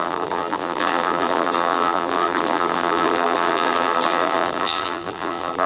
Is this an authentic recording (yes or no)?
no